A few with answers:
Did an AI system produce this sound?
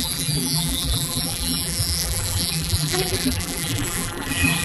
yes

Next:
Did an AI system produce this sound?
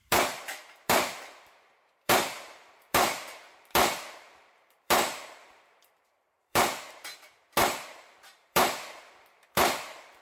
yes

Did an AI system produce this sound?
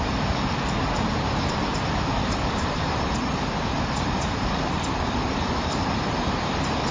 yes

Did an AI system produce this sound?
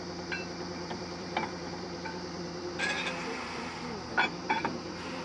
yes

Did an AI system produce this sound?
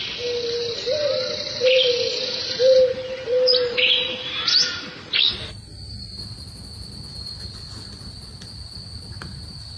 no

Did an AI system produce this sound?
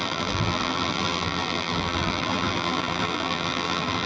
yes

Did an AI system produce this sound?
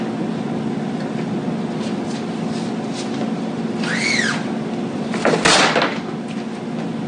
no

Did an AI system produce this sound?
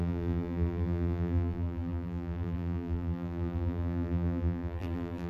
yes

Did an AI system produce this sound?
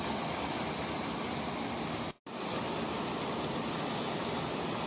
no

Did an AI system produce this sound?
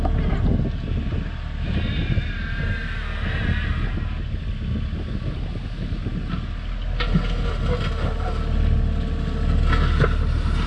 no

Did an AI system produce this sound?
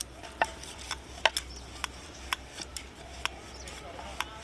no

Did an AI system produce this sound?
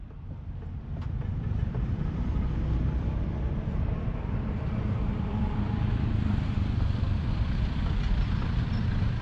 yes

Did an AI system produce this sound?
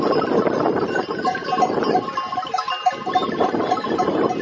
yes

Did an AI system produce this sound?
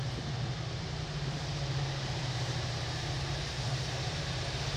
yes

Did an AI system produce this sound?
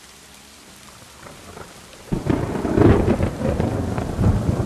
yes